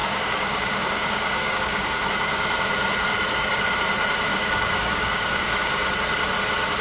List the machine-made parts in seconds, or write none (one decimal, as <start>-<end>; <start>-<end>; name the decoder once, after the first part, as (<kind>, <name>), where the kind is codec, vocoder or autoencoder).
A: 0.0-2.1 (codec, DAC); 4.3-5.9